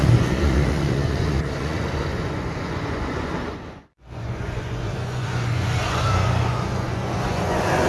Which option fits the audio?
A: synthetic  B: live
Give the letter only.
A